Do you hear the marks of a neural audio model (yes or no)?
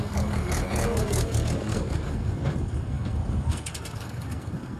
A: yes